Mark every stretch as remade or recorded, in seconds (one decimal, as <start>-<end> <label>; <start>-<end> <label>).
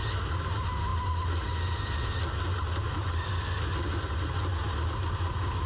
0.0-5.7 recorded